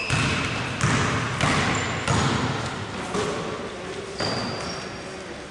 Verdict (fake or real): real